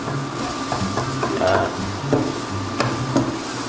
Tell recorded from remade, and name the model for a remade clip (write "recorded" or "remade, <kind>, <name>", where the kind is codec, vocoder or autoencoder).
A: recorded